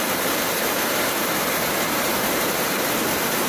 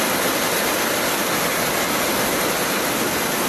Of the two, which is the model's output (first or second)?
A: first